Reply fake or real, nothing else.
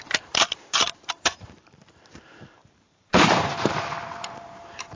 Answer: fake